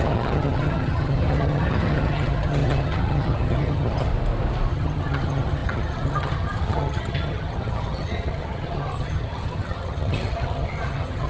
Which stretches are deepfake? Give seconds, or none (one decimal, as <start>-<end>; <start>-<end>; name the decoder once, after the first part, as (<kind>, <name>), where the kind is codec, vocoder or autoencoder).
0.0-4.1 (vocoder, HiFi-GAN); 4.7-11.3